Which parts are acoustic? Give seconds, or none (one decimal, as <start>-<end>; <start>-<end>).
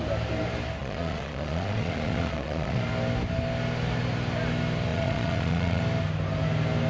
0.0-0.8; 2.8-4.9; 5.8-6.9